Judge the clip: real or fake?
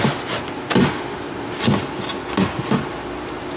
real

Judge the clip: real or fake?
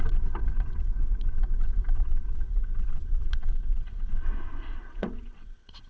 fake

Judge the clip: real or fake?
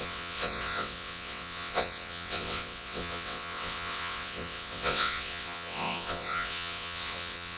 fake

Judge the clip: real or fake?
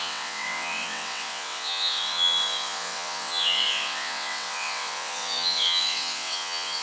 fake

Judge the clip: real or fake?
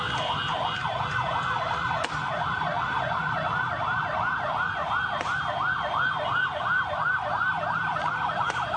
real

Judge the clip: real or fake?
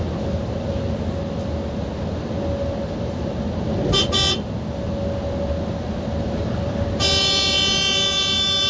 real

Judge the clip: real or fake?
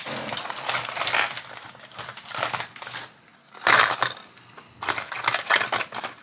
real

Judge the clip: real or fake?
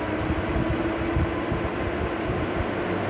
real